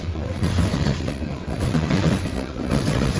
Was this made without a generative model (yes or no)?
no